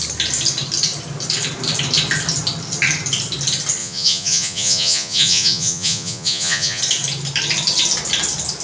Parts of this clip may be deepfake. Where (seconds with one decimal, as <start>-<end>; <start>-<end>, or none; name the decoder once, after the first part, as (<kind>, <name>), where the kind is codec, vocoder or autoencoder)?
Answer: 3.8-6.8 (vocoder, Vocos)